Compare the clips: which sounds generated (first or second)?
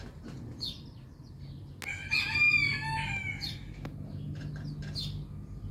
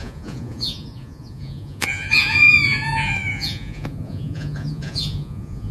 second